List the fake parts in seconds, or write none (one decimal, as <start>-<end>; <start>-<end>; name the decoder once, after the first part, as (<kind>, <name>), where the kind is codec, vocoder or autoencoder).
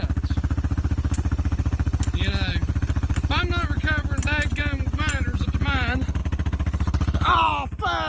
6.2-7.5 (vocoder, BigVGAN v2)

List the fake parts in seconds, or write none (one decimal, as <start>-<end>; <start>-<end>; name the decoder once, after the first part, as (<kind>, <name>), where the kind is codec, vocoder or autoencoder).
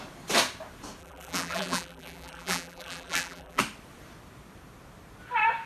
1.0-3.6 (vocoder, BigVGAN v2)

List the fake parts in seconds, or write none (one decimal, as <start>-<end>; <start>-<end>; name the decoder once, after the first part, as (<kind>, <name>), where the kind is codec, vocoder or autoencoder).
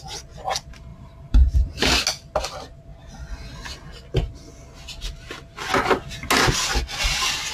0.9-1.8 (vocoder, BigVGAN v2)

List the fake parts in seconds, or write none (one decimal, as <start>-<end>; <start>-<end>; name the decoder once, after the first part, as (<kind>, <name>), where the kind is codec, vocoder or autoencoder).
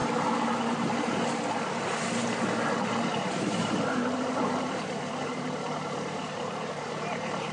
3.3-7.5 (vocoder, BigVGAN v2)